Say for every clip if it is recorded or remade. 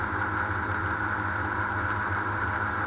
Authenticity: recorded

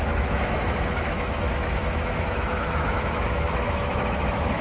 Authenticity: remade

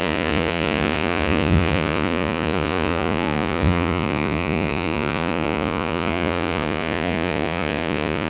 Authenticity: remade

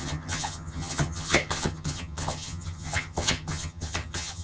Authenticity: remade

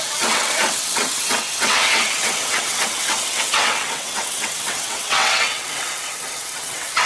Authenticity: remade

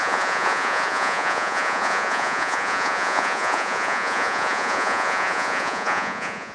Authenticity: remade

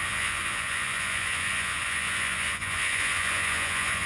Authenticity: remade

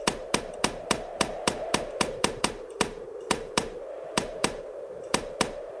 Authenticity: remade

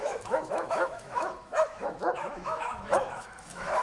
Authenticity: remade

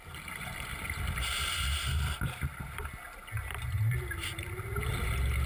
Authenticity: recorded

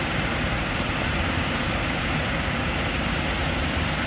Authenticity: remade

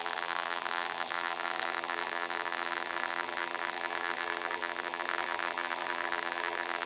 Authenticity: remade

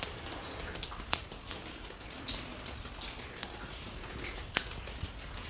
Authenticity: recorded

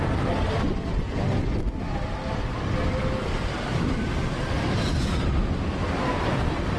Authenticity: recorded